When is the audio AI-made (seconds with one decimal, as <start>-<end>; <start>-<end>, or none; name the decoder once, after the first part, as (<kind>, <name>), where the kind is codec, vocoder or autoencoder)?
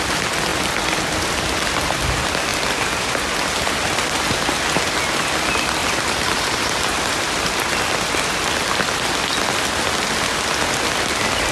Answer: 0.5-1.8 (vocoder, BigVGAN v2); 2.5-3.1; 5.8-7.8